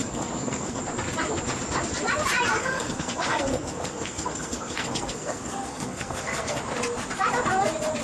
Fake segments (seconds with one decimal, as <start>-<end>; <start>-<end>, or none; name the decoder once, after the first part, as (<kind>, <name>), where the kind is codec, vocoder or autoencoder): 0.0-0.8 (codec, SNAC); 2.6-6.6

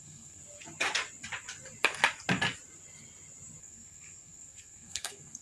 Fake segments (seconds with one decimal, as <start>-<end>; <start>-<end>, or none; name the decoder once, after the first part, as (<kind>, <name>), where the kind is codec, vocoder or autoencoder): 0.0-0.4 (codec, SNAC); 3.6-5.4